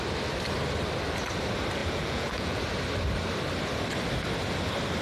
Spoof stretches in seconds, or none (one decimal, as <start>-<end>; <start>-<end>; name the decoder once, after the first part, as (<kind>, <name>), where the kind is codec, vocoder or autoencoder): 1.8-2.6 (vocoder, Vocos)